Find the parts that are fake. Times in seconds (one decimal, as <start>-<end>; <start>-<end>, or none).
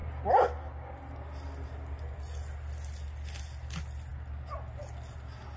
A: none